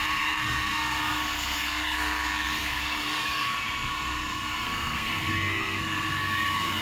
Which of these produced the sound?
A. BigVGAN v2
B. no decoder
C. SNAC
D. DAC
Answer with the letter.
C